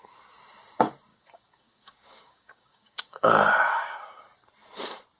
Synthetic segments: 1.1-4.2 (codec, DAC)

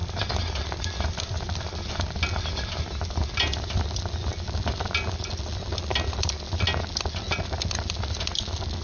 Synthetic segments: none

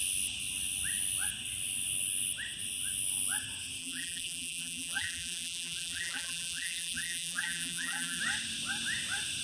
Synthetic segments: 3.8-8.2 (vocoder, BigVGAN v2)

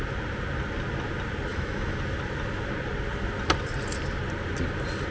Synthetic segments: 1.5-2.0 (autoencoder, DAC-VAE)

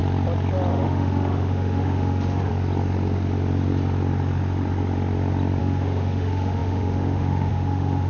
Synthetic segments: 0.7-2.5 (autoencoder, DAC-VAE); 5.6-8.1

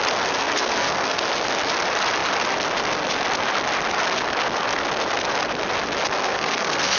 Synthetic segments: 0.4-1.2 (codec, SNAC); 6.2-7.0

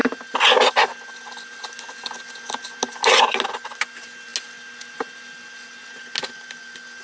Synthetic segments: none

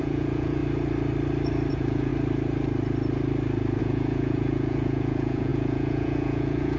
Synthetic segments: 0.0-0.6 (vocoder, Vocos); 1.7-2.1; 3.8-6.8